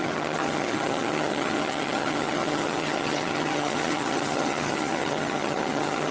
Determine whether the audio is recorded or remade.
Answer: remade